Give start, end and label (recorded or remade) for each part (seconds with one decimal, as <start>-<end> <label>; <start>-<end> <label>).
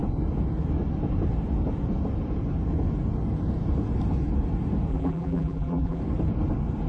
0.0-4.9 recorded; 4.9-6.0 remade; 6.0-6.9 recorded